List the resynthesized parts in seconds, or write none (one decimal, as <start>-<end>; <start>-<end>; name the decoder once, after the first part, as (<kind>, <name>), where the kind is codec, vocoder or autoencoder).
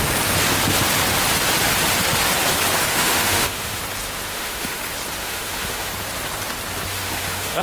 2.9-3.8 (autoencoder, DAC-VAE); 4.3-4.8; 5.2-5.9; 6.9-7.6